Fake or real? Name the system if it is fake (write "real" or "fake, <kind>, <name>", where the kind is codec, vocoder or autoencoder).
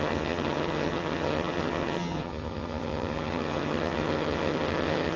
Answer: fake, vocoder, HiFi-GAN